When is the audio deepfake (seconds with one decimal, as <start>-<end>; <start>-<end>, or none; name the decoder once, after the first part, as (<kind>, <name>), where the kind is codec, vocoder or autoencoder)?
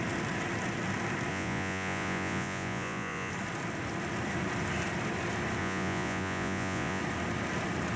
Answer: 1.3-3.3 (vocoder, Vocos); 5.6-7.0